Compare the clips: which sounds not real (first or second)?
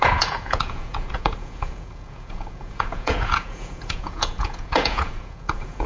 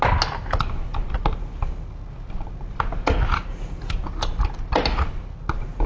first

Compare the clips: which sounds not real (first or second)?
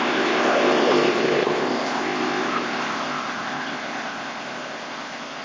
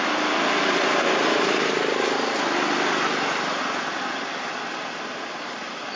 first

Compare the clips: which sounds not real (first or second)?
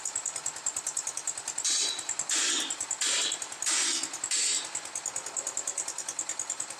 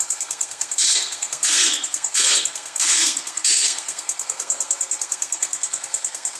second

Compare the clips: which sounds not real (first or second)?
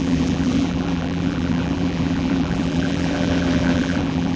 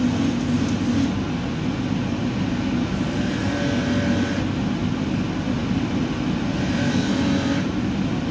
first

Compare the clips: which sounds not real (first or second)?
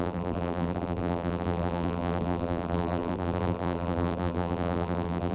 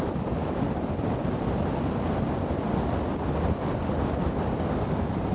first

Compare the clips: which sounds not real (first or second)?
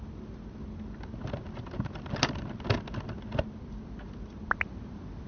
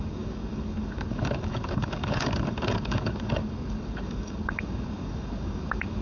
second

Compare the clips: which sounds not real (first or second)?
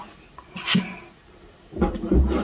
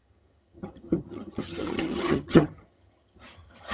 second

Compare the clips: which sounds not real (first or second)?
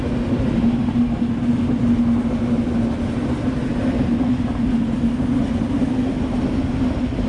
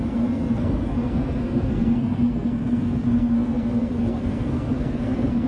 second